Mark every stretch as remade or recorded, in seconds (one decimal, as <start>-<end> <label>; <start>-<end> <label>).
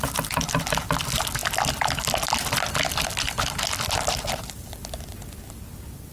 0.0-6.1 recorded